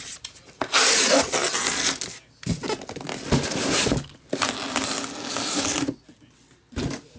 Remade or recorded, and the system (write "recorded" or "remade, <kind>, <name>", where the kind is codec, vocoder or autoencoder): recorded